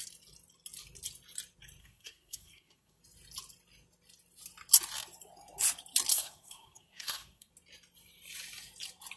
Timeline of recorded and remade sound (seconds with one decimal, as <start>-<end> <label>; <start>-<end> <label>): 0.0-1.8 recorded; 1.8-3.0 remade; 3.0-6.1 recorded; 6.1-7.5 remade; 7.5-9.2 recorded